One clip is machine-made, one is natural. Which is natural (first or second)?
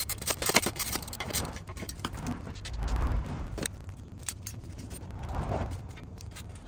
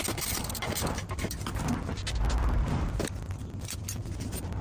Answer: second